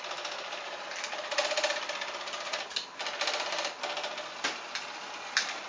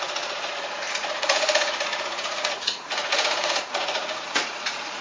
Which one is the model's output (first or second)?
second